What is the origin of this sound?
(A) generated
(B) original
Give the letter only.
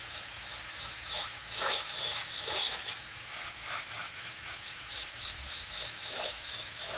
A